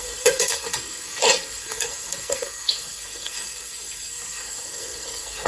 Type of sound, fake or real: fake